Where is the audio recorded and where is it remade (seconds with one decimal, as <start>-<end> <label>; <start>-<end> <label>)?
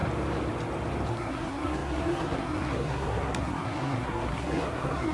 0.0-1.1 recorded; 1.1-5.1 remade